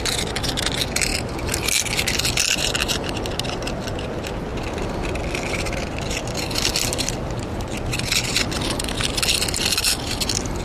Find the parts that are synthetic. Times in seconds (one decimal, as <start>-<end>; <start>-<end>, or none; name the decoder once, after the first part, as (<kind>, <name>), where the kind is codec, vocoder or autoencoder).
none